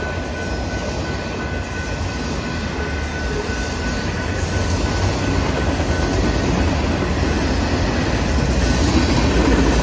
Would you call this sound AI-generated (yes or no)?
no